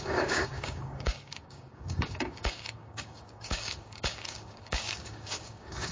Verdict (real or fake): fake